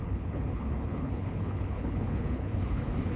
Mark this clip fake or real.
fake